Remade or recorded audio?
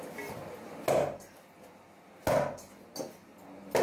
recorded